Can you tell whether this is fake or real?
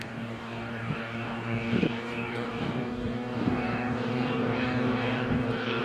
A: fake